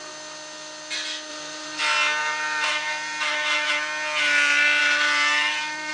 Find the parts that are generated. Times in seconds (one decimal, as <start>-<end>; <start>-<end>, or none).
1.3-1.8; 2.2-3.7; 4.8-5.9